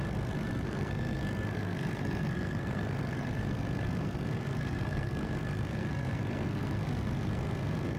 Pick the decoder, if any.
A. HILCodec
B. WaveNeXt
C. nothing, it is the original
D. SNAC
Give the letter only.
D